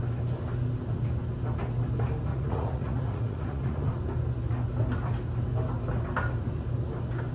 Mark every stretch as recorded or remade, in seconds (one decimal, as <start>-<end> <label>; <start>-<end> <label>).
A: 0.0-2.3 recorded; 2.3-4.0 remade; 4.0-7.3 recorded